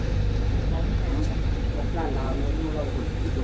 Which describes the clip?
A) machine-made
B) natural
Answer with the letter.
A